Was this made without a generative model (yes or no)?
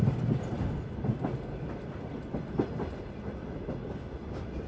yes